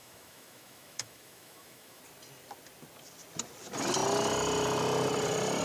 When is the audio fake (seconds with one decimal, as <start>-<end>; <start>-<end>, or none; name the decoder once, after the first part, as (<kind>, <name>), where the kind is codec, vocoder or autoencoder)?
0.0-2.0 (autoencoder, DAC-VAE)